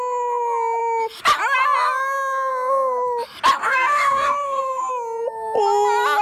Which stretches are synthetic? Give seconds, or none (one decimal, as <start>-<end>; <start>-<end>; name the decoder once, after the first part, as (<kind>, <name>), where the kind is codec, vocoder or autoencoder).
3.6-4.9 (codec, DAC)